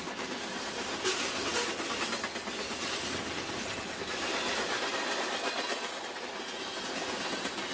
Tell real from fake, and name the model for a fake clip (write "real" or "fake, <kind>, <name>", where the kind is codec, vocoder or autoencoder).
real